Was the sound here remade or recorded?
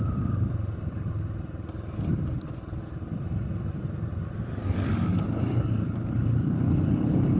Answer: remade